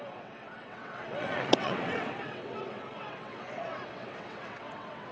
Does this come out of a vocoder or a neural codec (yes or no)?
yes